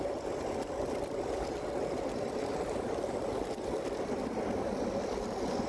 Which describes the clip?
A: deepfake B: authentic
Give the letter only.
B